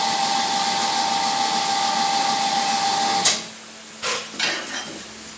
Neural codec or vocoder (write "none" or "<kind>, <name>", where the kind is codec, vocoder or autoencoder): none